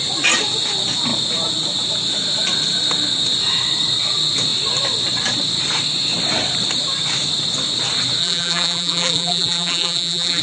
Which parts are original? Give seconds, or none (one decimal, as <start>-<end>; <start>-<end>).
0.0-8.2